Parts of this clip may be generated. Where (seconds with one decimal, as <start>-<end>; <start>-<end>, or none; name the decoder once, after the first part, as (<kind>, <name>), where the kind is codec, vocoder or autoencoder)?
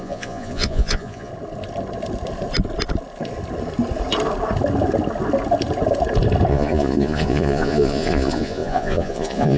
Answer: 0.0-1.3 (vocoder, Vocos); 6.5-9.6